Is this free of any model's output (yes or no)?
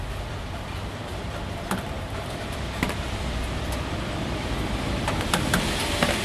no